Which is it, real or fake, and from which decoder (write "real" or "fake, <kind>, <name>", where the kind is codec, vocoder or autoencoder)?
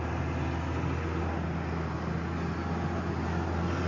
real